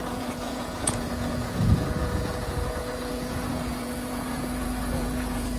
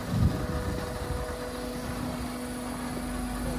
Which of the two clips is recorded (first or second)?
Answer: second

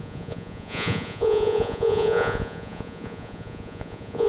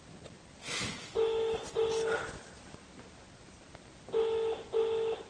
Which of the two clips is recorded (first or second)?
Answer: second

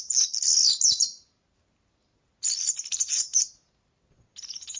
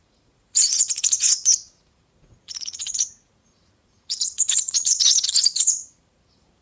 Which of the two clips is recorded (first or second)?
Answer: first